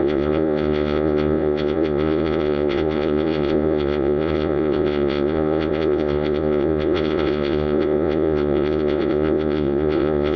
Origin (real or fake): fake